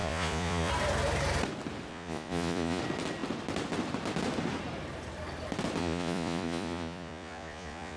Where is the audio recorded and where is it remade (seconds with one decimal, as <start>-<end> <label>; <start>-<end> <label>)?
0.0-0.7 remade; 0.7-1.9 recorded; 1.9-2.8 remade; 2.8-5.8 recorded; 5.8-8.0 remade